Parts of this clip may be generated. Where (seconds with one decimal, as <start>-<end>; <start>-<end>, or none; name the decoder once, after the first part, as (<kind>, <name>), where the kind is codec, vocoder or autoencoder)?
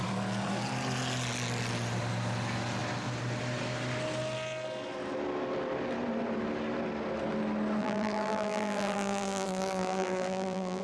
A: 7.8-10.8 (vocoder, BigVGAN v2)